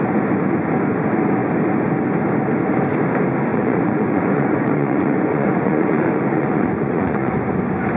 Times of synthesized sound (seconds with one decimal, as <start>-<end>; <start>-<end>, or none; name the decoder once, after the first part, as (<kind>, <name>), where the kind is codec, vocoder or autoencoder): 3.5-7.3 (vocoder, Vocos)